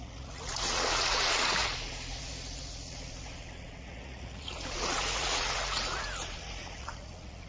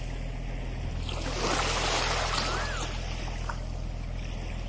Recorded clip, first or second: second